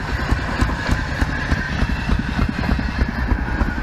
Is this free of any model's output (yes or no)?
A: yes